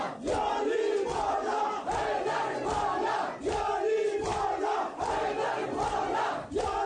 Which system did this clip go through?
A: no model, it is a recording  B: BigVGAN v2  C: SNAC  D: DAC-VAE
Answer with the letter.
A